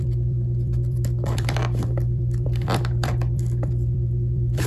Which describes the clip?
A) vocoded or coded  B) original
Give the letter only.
A